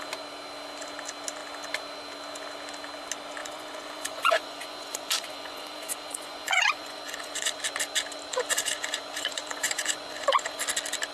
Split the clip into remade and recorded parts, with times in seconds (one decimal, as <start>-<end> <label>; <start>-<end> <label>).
0.0-3.4 recorded; 3.4-7.6 remade; 7.6-8.3 recorded; 8.3-10.6 remade; 10.6-11.1 recorded